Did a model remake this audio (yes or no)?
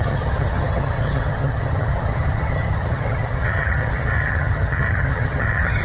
yes